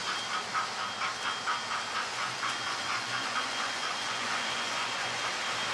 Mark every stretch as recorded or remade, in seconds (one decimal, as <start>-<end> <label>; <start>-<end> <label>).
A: 0.0-1.9 recorded; 1.9-5.3 remade; 5.3-5.7 recorded